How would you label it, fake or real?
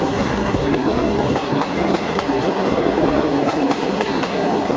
fake